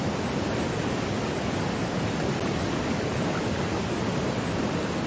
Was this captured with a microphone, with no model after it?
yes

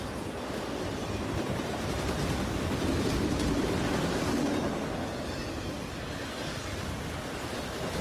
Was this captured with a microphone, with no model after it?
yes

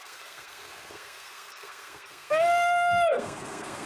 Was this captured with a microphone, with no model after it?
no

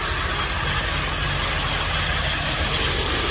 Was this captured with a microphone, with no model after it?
yes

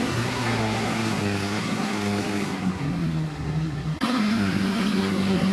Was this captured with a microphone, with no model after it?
no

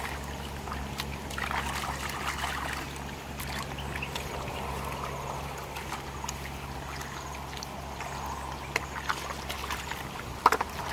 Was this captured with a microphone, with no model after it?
yes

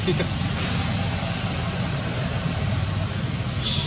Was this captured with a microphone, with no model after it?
yes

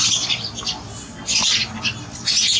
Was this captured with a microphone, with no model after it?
yes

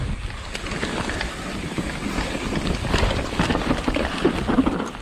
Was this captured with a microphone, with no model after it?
yes